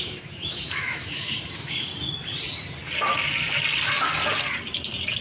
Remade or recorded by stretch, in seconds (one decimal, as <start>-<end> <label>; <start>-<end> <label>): 0.0-1.9 remade; 1.9-5.2 recorded